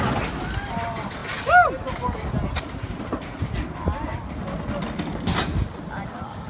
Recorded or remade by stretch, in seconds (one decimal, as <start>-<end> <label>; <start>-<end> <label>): 0.0-6.5 recorded